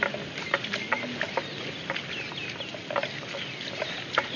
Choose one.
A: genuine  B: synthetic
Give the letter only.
A